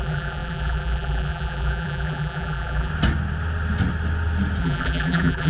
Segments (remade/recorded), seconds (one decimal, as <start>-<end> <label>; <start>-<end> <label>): 0.0-2.9 remade; 2.9-4.6 recorded; 4.6-5.5 remade